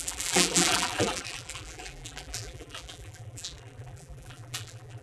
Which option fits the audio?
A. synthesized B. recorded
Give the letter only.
A